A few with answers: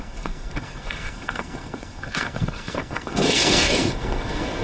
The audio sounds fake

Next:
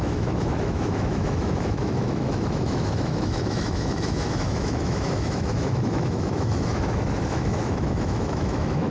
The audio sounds fake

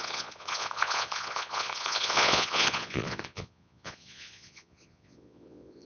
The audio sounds fake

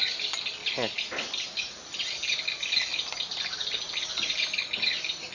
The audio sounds real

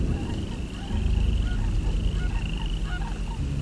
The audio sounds real